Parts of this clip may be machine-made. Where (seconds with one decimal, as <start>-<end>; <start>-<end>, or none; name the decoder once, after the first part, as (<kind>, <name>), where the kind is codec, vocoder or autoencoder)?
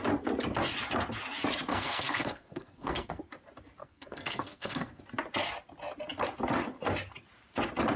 1.7-3.2 (codec, SNAC); 3.8-5.0